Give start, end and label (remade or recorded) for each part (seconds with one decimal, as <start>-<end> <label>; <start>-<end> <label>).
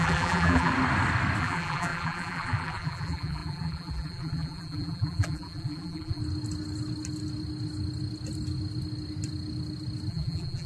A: 0.0-0.7 remade; 0.7-1.4 recorded; 1.4-6.2 remade; 6.2-10.1 recorded; 10.1-10.7 remade